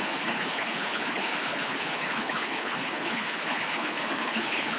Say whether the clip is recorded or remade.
remade